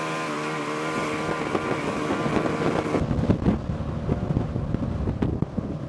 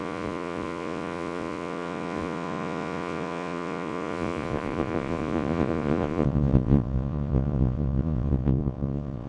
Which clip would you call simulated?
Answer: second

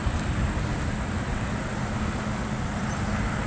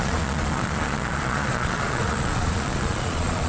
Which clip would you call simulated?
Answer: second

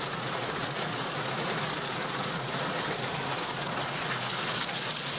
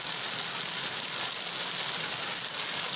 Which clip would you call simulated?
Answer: first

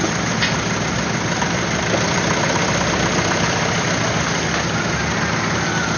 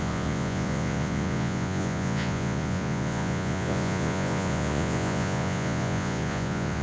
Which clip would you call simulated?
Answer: second